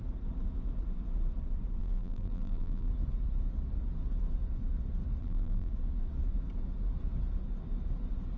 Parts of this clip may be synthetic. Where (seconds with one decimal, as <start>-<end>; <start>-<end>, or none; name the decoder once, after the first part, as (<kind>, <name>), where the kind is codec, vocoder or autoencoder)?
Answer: 1.8-2.9 (vocoder, BigVGAN v2); 5.2-5.7